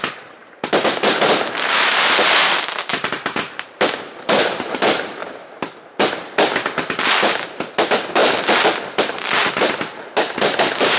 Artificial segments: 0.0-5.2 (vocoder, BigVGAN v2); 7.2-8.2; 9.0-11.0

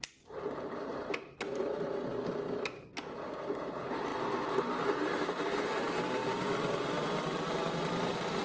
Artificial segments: 0.0-4.1 (vocoder, BigVGAN v2); 5.4-8.4

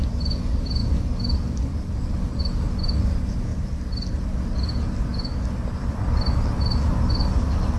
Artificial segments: 0.8-2.4 (vocoder, BigVGAN v2)

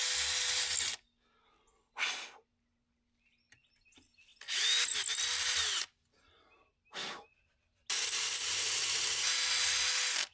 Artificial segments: none